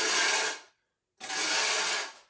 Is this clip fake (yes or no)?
no